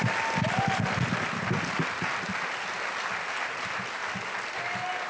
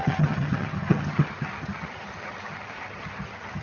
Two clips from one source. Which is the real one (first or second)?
first